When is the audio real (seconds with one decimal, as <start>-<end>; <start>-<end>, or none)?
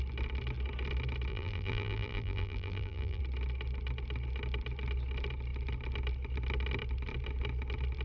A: 0.0-1.3; 3.2-8.0